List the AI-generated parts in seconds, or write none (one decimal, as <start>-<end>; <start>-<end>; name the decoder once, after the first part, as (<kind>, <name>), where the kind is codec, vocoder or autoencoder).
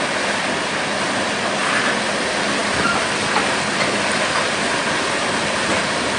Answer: none